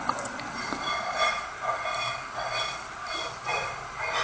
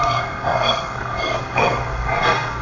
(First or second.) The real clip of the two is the first